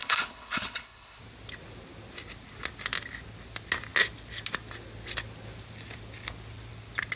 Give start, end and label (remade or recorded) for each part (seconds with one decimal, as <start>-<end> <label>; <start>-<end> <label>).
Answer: 0.0-1.2 remade; 1.2-7.2 recorded